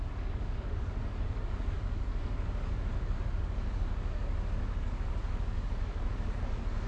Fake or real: fake